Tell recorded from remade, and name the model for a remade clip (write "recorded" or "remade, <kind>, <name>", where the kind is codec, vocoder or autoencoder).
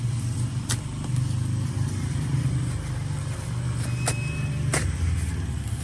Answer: recorded